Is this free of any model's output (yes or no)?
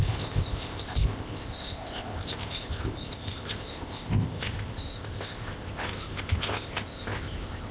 no